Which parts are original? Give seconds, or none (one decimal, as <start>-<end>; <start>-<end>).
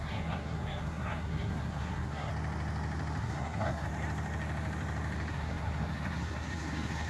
2.3-3.2; 3.9-5.3